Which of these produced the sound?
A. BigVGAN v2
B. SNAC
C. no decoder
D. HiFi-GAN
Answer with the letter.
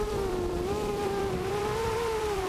A